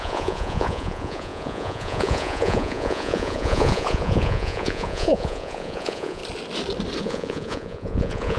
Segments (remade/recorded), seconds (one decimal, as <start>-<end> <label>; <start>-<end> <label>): 0.0-6.2 remade; 6.2-7.0 recorded; 7.0-8.4 remade